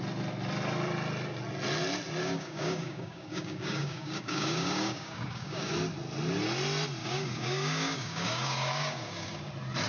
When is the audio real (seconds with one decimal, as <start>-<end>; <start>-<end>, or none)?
0.0-2.2; 5.7-7.0; 9.5-9.9